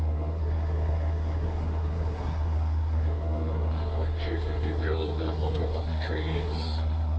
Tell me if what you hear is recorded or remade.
remade